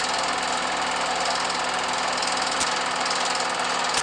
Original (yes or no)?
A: yes